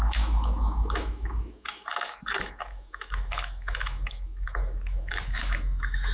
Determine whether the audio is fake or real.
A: fake